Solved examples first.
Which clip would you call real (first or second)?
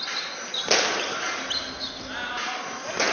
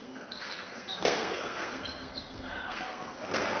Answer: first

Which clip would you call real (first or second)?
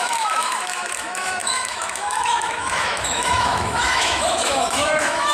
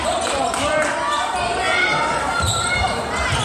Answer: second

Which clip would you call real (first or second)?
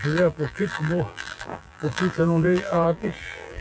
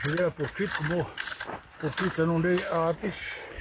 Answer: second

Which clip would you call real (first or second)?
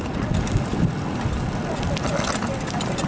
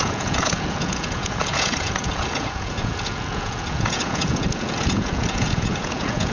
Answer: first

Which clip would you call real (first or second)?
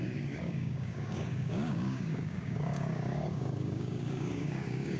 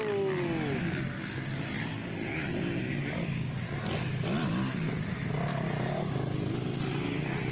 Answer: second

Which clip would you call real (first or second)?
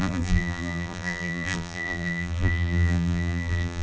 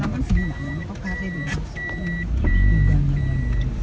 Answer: second